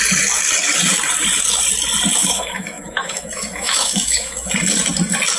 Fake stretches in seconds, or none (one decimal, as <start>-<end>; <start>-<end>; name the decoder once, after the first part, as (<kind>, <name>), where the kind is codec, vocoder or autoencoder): 2.2-4.5 (autoencoder, DAC-VAE)